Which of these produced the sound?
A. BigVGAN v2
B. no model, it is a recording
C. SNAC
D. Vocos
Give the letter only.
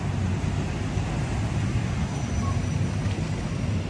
B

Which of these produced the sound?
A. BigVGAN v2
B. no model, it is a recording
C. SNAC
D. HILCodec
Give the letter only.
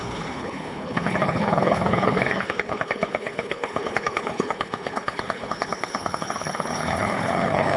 D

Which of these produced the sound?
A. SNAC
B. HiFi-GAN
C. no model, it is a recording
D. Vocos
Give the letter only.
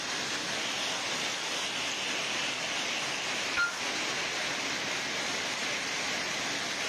C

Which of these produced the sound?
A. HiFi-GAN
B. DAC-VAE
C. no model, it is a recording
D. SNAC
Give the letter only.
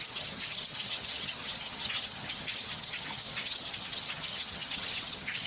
A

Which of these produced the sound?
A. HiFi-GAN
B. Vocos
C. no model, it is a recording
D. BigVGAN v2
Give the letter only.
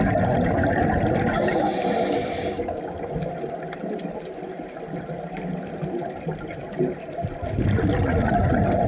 C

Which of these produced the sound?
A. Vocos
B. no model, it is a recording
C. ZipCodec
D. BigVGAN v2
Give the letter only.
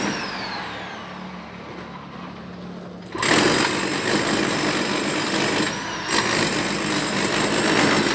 B